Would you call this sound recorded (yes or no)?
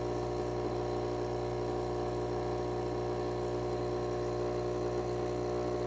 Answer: yes